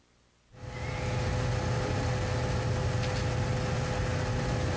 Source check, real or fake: real